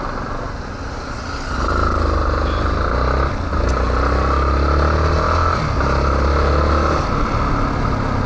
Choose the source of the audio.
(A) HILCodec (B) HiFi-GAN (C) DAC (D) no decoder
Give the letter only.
D